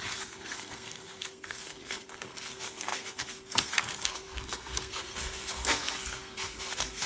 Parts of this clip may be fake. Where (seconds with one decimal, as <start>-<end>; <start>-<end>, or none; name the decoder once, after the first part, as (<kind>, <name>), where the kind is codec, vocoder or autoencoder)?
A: 0.0-7.1 (codec, SNAC)